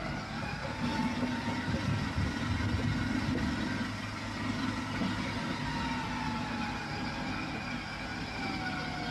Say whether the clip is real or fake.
real